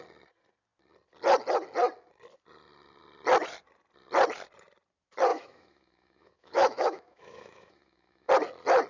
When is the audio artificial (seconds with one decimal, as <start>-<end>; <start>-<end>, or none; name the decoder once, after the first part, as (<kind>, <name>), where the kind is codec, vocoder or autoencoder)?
5.3-8.3 (autoencoder, DAC-VAE)